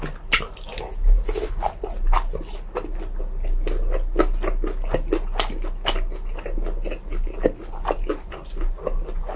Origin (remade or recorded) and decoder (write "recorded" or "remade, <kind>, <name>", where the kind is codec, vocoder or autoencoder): recorded